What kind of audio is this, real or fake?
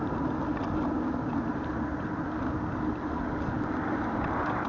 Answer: real